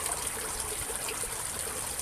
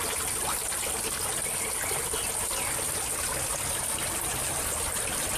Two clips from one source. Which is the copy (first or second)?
first